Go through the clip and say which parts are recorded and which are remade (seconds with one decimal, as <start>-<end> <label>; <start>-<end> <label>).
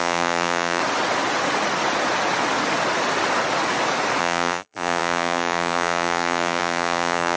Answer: 0.0-0.8 remade; 0.8-4.2 recorded; 4.2-7.4 remade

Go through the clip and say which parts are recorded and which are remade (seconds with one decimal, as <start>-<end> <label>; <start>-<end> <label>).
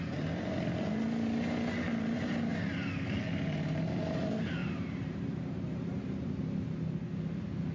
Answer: 0.0-4.6 recorded; 4.6-6.1 remade; 6.1-7.7 recorded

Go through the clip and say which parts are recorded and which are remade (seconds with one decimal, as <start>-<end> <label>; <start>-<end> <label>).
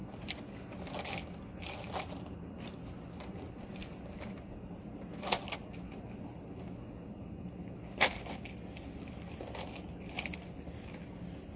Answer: 0.0-11.6 recorded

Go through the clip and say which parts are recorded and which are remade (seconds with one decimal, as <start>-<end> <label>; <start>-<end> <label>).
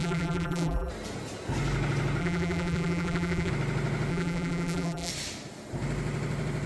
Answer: 0.0-0.9 remade; 0.9-2.2 recorded; 2.2-3.5 remade; 3.5-4.1 recorded; 4.1-5.1 remade; 5.1-6.7 recorded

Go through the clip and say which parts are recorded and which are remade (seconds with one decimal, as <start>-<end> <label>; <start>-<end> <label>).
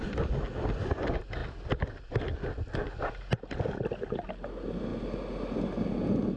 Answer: 0.0-1.4 recorded; 1.4-3.1 remade; 3.1-6.4 recorded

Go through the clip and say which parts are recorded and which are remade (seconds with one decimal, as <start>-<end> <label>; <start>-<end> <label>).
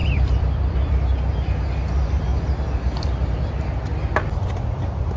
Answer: 0.0-0.9 remade; 0.9-2.3 recorded; 2.3-3.5 remade; 3.5-5.2 recorded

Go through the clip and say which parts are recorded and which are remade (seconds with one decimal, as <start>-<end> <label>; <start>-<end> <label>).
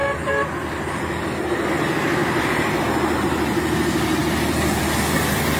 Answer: 0.0-2.2 recorded; 2.2-2.8 remade; 2.8-5.6 recorded